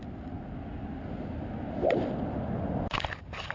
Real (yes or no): yes